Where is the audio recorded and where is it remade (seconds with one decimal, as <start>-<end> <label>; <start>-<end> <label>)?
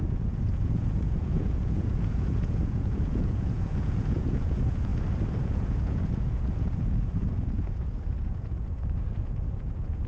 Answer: 0.0-4.9 remade; 4.9-5.4 recorded; 5.4-10.1 remade